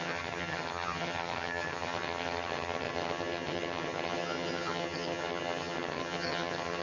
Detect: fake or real fake